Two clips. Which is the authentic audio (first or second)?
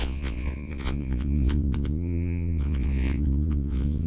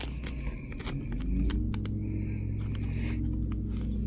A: second